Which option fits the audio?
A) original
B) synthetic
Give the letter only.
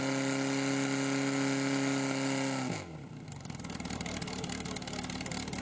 A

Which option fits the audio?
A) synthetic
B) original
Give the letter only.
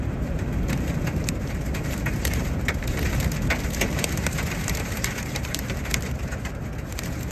A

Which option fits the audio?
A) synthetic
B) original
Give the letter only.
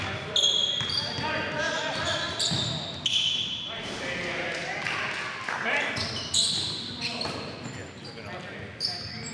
B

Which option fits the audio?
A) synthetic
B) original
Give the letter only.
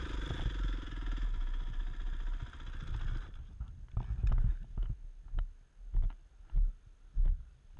B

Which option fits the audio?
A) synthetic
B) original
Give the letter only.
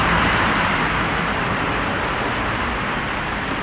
A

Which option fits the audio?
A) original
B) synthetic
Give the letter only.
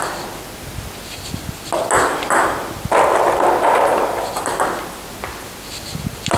A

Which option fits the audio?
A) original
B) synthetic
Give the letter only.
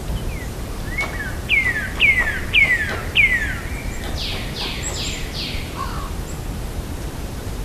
A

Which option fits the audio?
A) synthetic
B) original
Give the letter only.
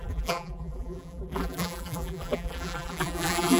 A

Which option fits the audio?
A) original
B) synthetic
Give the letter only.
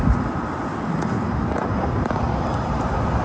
A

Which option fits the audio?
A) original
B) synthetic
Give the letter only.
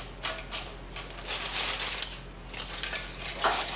A